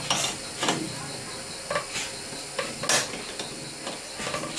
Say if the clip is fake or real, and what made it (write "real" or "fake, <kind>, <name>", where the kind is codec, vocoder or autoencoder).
real